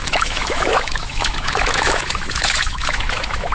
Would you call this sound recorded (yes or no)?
no